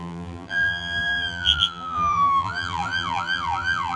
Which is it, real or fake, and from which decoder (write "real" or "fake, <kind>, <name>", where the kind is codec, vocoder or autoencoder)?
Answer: fake, vocoder, BigVGAN v2